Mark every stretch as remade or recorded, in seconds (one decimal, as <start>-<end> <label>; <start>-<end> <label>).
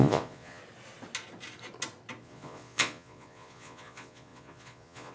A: 0.0-0.6 remade; 0.6-2.2 recorded; 2.2-5.1 remade